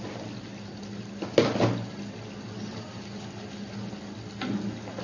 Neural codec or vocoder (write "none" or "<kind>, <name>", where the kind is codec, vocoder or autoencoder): none